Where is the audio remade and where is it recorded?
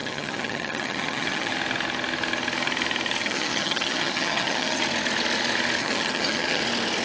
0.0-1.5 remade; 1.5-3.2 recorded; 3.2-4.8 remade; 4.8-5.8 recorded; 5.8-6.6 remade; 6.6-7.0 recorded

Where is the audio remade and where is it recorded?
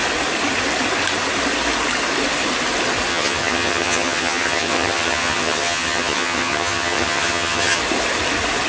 0.0-3.1 recorded; 3.1-7.8 remade; 7.8-8.7 recorded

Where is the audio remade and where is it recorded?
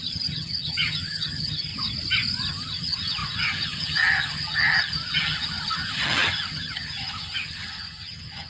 0.0-1.7 remade; 1.7-2.5 recorded; 2.5-8.5 remade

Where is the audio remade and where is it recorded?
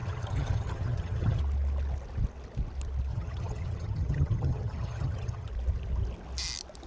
0.0-1.4 remade; 1.4-3.1 recorded; 3.1-5.5 remade; 5.5-6.9 recorded